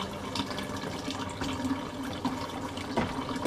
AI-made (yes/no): no